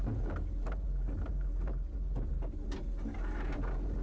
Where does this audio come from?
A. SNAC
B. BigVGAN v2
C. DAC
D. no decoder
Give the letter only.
D